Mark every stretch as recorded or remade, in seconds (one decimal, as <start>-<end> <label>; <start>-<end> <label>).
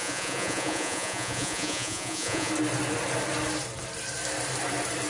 0.0-2.5 remade; 2.5-5.1 recorded